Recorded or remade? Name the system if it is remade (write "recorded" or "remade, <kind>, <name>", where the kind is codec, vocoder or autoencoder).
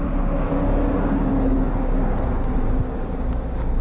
remade, codec, DAC